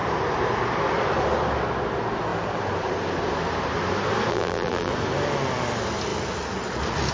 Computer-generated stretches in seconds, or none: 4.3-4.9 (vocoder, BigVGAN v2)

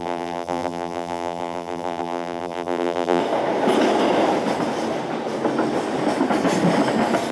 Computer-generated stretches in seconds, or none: 0.0-3.2 (vocoder, BigVGAN v2)

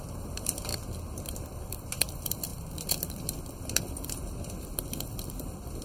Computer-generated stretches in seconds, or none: 0.0-0.7 (vocoder, BigVGAN v2); 1.3-5.8

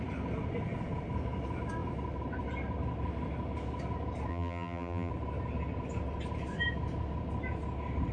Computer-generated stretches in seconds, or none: 4.3-5.1 (vocoder, BigVGAN v2)

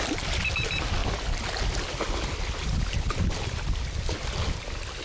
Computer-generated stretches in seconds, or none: none

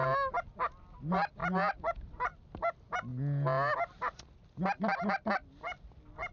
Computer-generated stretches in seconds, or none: none

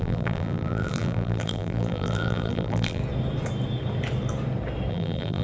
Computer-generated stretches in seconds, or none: 0.0-3.0 (vocoder, BigVGAN v2); 4.9-5.4